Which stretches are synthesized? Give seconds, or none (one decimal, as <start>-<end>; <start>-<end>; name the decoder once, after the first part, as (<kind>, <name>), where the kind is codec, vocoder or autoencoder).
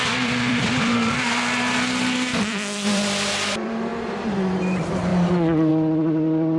0.0-5.1 (vocoder, BigVGAN v2); 5.7-6.6